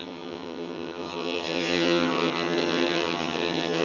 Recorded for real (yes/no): no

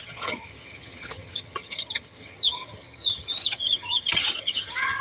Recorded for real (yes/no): no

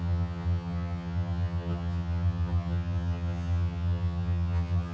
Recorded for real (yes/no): no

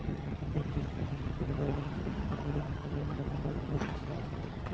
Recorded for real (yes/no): no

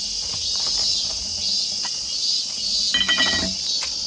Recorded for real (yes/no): yes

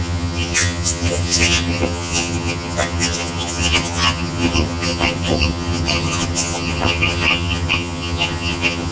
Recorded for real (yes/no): no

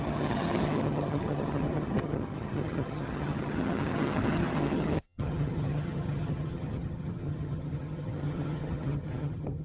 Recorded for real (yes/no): no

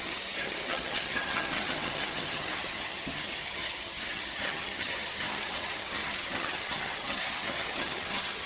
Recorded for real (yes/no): no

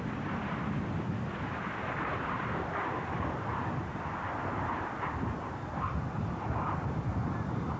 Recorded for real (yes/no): yes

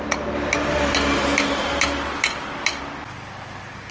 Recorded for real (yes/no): yes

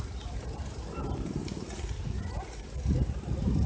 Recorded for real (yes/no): yes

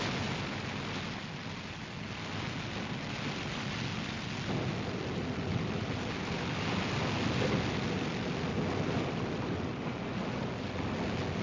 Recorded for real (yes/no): yes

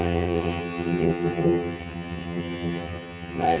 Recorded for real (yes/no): no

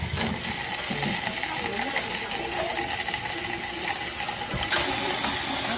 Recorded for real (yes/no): yes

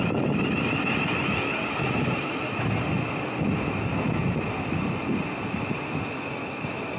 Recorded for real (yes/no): yes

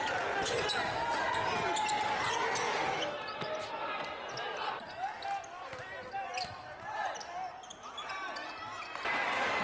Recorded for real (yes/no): yes